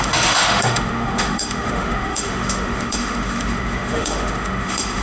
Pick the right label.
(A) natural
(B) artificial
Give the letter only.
B